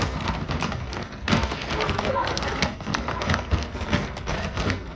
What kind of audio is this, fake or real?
fake